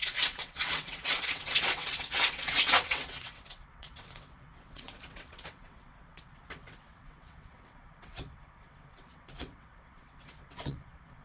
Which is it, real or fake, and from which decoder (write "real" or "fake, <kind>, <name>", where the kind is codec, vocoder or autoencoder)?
fake, vocoder, WaveNeXt